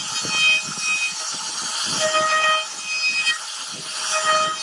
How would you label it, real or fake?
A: real